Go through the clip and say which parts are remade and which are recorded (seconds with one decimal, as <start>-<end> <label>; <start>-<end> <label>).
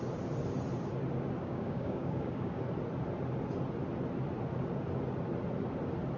0.0-1.4 recorded; 1.4-2.6 remade; 2.6-6.2 recorded